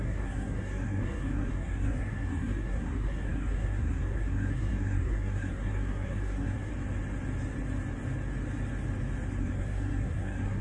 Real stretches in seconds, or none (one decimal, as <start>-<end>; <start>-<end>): 6.7-9.4